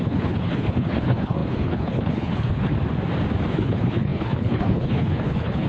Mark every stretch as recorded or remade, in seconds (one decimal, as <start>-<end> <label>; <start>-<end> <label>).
0.0-2.7 remade; 2.7-3.5 recorded; 3.5-5.7 remade